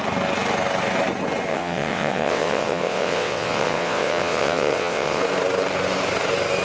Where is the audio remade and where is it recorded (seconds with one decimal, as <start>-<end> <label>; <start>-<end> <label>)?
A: 0.0-1.5 recorded; 1.5-5.2 remade; 5.2-6.6 recorded